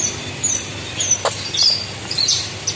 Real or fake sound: fake